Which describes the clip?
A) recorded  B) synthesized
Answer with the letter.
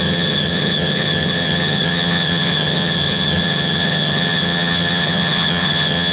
B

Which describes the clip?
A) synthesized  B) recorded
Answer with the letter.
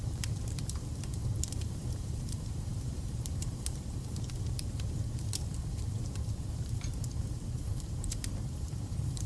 A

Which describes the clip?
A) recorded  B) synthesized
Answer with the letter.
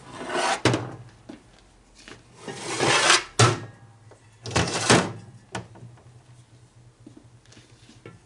A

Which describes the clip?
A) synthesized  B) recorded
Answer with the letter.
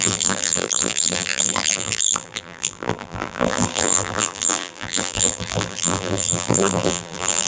A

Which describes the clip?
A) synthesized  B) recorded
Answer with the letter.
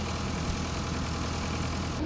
B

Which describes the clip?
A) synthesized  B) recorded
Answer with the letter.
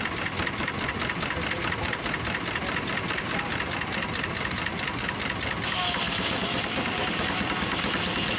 B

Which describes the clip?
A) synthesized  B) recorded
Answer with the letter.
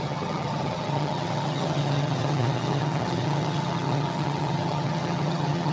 A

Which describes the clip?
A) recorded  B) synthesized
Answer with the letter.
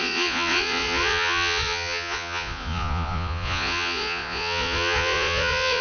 B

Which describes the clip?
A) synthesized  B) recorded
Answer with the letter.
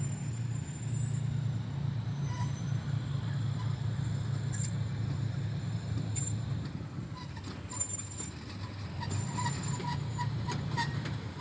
B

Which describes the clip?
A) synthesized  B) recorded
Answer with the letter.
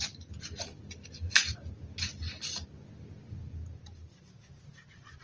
B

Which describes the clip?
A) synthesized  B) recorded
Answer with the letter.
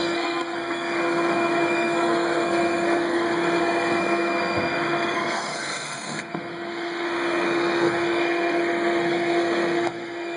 A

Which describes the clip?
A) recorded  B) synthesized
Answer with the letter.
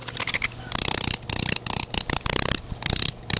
A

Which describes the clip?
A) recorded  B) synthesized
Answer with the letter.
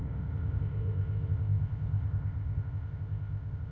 B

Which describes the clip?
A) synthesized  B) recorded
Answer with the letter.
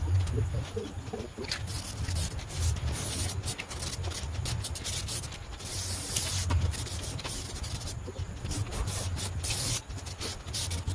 B